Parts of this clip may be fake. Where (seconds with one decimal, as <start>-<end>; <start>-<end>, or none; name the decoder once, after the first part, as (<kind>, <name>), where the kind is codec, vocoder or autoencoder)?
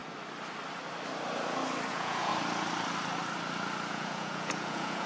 1.9-2.3 (vocoder, Vocos); 3.9-5.1